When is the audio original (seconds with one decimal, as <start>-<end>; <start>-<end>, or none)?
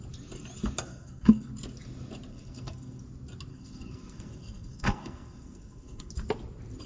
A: 0.0-0.9; 1.5-2.3; 3.0-3.5; 6.1-6.9